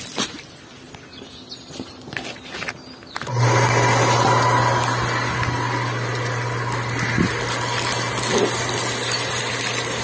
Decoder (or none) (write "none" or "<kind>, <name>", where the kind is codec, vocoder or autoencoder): none